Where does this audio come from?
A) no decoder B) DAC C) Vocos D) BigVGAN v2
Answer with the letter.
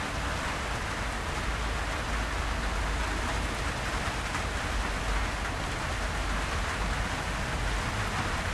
A